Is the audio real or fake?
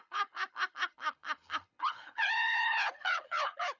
fake